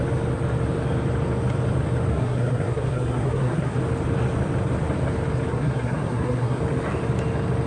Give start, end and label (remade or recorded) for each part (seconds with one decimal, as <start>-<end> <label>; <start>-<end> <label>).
0.0-2.1 recorded; 2.1-3.8 remade; 3.8-5.5 recorded; 5.5-6.6 remade; 6.6-7.7 recorded